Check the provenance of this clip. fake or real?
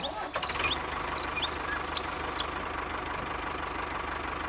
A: real